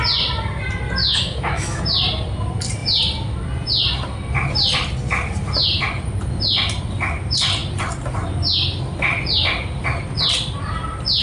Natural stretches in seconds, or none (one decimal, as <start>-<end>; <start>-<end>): 0.0-1.0; 1.8-11.2